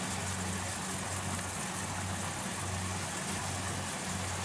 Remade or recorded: recorded